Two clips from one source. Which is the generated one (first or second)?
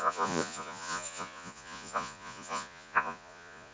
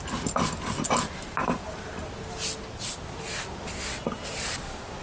first